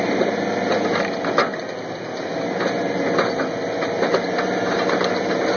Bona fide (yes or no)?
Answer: yes